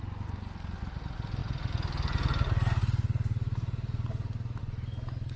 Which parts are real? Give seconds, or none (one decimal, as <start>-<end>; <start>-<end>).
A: 0.0-5.4